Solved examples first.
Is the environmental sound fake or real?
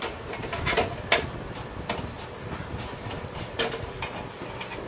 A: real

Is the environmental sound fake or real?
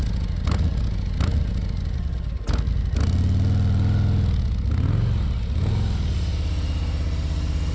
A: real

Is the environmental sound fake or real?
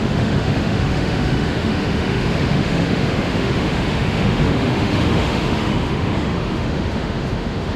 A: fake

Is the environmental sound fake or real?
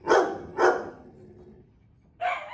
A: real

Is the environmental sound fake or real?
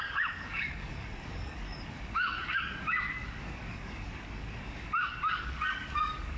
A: fake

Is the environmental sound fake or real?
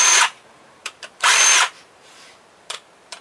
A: fake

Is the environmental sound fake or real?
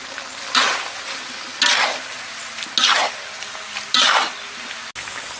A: real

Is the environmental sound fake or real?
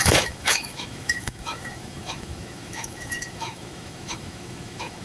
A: fake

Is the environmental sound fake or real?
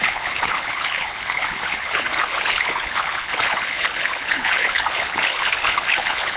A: fake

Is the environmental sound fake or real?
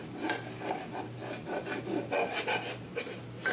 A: real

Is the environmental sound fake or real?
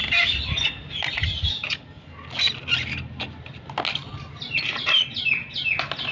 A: real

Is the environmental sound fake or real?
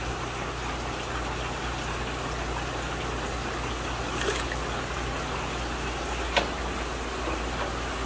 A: real